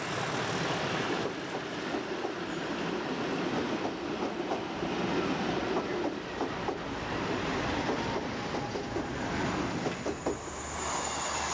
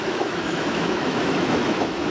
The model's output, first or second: second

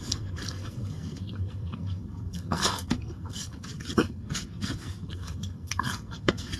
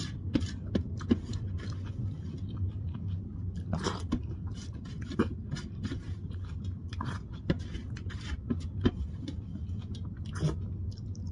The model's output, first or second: first